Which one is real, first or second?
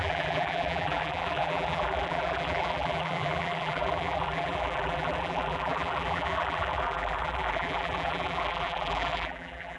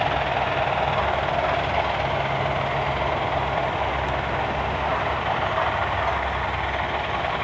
second